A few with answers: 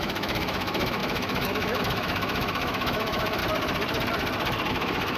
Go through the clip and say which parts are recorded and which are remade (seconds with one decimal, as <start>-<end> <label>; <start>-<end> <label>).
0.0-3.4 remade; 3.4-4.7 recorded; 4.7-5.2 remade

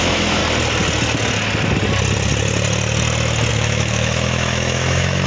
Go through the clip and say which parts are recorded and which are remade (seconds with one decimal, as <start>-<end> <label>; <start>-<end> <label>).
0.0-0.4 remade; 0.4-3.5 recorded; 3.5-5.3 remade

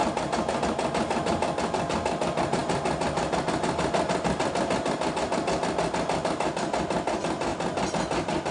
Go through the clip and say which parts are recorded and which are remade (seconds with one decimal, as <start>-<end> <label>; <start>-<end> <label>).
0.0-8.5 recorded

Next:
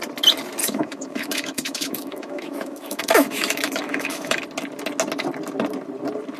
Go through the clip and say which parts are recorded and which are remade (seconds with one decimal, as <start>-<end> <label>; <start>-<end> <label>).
0.0-0.6 recorded; 0.6-4.4 remade; 4.4-6.4 recorded

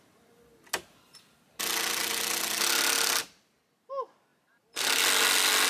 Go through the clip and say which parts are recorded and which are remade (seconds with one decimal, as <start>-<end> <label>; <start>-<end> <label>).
0.0-5.7 recorded